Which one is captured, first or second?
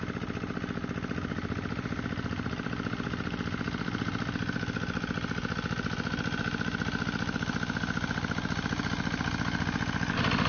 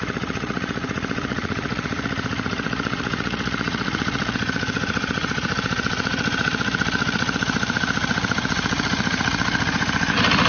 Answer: first